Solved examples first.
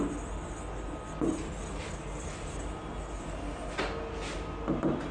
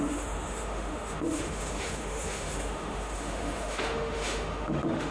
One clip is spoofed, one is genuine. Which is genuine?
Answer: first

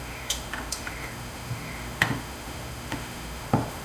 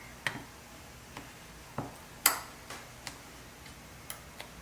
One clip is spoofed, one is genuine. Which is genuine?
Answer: second